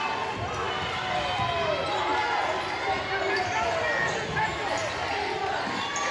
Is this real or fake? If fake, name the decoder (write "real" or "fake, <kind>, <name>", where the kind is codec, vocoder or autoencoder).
real